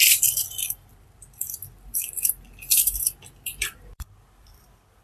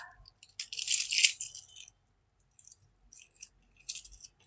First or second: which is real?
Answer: second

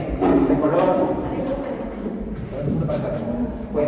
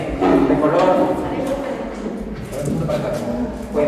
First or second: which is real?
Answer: second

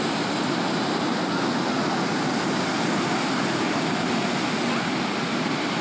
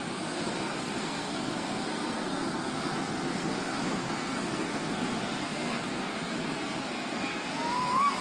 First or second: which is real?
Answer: first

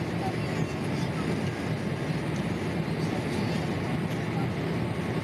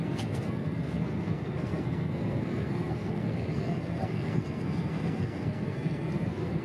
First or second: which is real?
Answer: first